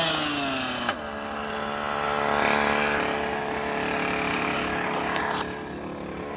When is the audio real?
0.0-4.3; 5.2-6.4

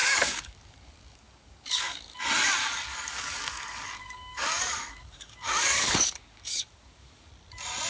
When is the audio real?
2.2-2.6; 7.3-7.9

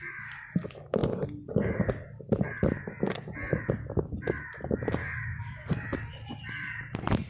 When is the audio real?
0.0-5.0; 5.7-7.3

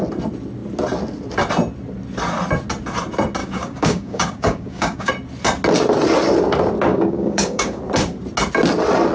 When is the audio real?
0.0-3.4; 5.1-6.9; 7.8-9.1

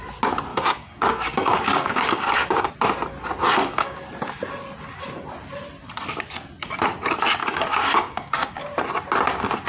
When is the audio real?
0.0-0.5; 2.7-3.4; 4.0-7.4; 8.6-9.7

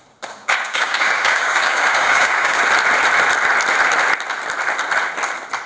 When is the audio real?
0.0-0.4; 2.6-5.7

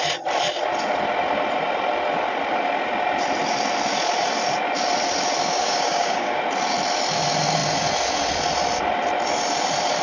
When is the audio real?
0.0-5.6; 6.4-10.0